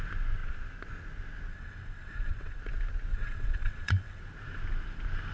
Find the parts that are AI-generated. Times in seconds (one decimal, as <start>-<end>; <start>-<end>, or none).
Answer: 1.5-2.6; 3.1-4.2